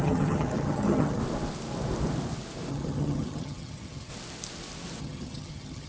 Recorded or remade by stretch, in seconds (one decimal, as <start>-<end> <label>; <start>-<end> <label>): 0.0-1.2 remade; 1.2-2.7 recorded; 2.7-4.1 remade; 4.1-5.0 recorded; 5.0-5.9 remade